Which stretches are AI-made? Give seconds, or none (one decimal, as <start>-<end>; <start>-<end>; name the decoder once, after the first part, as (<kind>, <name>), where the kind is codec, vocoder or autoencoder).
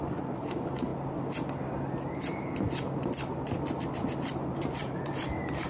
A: 0.0-0.9 (vocoder, BigVGAN v2); 4.3-5.7